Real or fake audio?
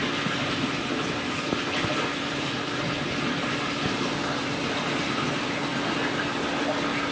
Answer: real